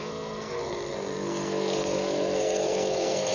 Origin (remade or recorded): remade